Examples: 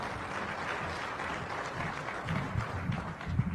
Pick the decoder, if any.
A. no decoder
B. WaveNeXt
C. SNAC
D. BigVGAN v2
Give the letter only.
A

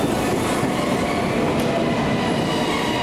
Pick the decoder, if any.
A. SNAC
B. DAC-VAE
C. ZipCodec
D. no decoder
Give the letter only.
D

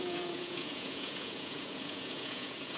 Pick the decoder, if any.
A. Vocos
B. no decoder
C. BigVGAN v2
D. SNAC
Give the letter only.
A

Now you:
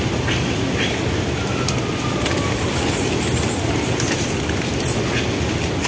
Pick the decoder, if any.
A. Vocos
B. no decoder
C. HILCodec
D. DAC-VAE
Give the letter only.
B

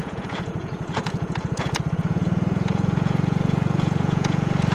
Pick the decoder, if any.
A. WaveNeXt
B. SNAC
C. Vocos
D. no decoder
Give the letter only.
C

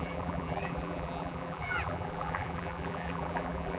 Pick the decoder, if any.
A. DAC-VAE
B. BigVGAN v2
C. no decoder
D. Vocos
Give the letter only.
B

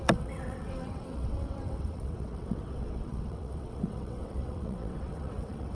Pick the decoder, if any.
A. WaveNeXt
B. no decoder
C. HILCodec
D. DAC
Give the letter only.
A